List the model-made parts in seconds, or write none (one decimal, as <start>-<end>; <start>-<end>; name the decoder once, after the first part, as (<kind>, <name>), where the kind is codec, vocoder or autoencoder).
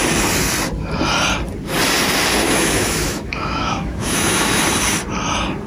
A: 2.4-4.6 (autoencoder, DAC-VAE)